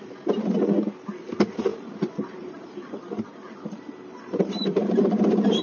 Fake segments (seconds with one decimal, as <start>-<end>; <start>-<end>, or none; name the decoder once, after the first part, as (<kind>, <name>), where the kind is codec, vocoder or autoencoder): 1.7-5.1 (vocoder, BigVGAN v2)